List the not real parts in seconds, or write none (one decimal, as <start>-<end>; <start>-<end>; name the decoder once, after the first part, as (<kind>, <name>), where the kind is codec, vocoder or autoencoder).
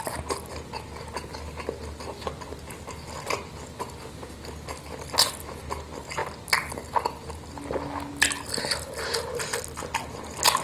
none